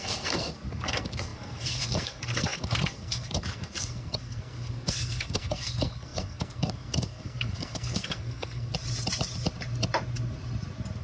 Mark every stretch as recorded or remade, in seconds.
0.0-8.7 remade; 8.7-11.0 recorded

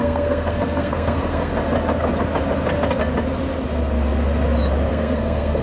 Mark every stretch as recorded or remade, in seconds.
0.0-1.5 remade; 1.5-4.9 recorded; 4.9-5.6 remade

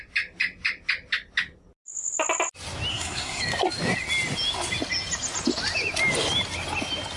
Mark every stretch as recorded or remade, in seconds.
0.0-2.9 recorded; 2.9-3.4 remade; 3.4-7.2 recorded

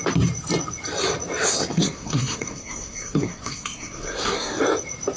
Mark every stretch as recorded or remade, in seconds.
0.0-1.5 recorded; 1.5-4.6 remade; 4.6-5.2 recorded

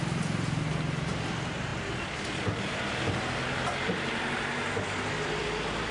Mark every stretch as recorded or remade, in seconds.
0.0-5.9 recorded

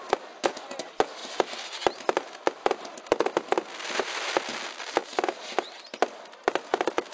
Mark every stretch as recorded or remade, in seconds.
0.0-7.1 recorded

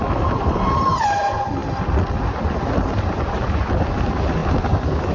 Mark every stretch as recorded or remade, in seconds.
0.0-5.1 recorded